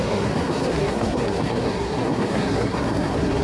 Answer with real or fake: fake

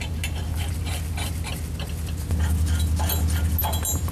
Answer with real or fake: real